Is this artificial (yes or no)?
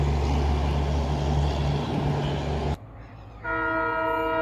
no